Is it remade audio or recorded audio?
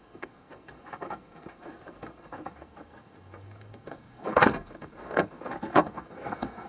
remade